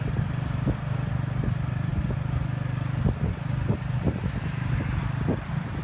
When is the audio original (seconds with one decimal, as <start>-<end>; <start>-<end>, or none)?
0.0-5.8